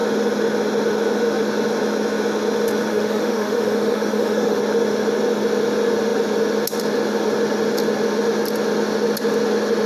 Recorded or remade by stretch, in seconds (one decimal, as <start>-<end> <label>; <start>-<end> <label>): 0.0-2.9 recorded; 2.9-4.6 remade; 4.6-9.9 recorded